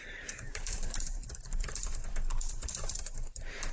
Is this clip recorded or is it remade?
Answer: remade